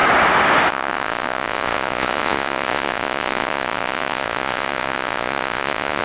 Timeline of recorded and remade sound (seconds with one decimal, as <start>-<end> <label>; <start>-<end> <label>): 0.0-0.7 recorded; 0.7-6.0 remade